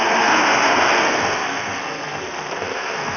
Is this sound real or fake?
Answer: fake